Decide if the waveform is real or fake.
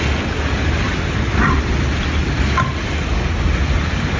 real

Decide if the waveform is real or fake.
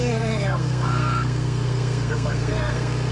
fake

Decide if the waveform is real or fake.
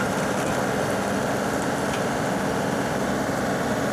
real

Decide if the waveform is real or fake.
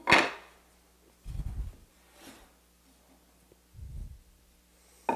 real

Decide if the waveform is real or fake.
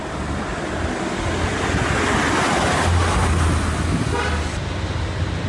real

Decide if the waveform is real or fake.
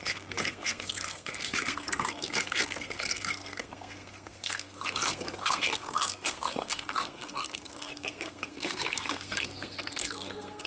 fake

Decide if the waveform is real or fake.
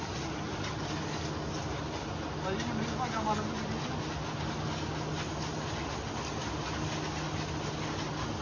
real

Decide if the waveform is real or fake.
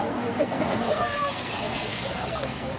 fake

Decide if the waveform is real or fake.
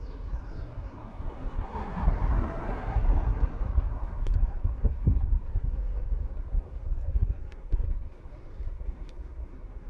fake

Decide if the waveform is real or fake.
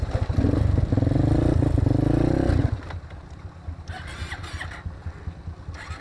real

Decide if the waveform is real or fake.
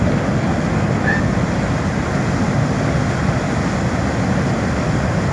real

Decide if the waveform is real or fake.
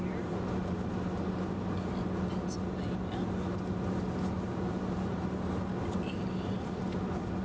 real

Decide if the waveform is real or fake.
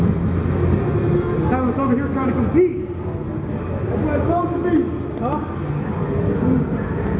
real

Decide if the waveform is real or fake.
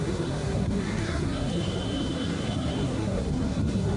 fake